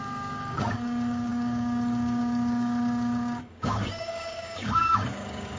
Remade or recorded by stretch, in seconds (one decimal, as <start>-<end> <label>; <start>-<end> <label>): 0.0-5.6 remade